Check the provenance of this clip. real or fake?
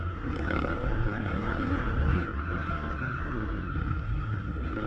fake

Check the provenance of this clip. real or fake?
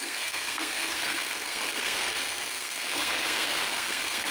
fake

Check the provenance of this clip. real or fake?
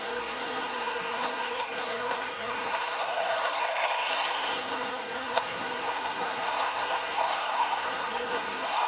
fake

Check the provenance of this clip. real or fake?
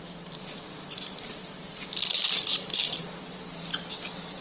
real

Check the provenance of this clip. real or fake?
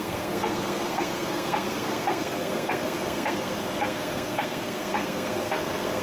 fake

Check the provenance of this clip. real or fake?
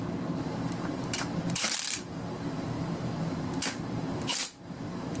fake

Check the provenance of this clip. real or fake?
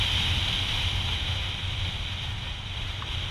real